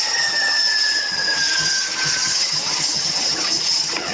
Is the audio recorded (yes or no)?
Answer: no